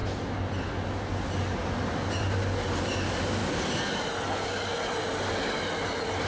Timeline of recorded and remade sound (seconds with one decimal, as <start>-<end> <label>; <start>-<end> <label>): 0.0-6.3 recorded